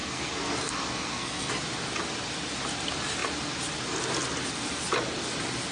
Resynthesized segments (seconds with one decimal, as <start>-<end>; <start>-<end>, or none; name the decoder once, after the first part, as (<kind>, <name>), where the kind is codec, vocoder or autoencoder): 0.0-1.5 (codec, SNAC)